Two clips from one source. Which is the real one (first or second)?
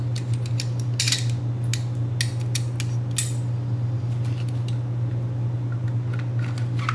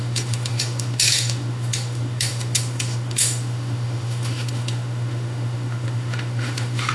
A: first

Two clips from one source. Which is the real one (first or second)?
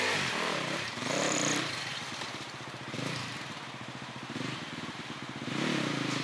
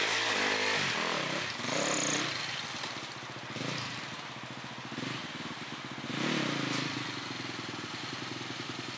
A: second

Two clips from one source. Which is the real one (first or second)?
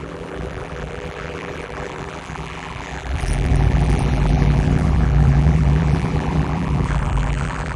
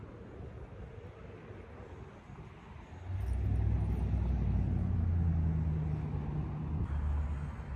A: second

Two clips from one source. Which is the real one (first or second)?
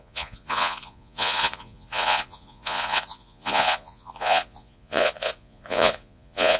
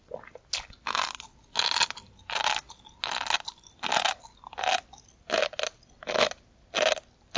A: second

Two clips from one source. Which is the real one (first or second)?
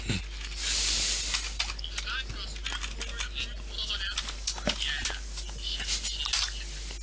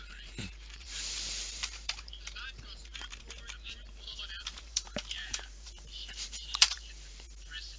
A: first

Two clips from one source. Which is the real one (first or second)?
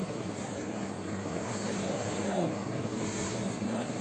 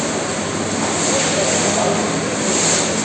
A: second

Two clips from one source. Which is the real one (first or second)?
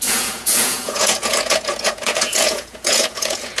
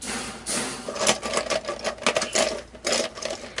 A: second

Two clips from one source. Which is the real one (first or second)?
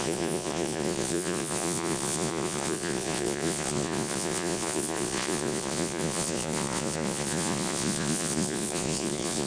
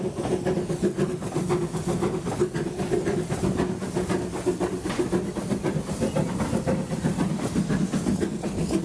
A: second